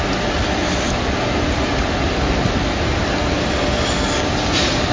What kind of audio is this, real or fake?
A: real